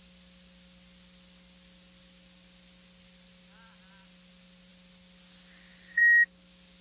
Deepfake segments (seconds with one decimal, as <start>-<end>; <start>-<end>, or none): none